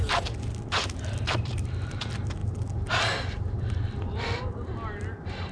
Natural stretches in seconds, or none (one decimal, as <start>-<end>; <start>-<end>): none